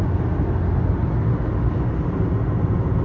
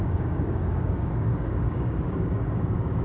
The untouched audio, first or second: first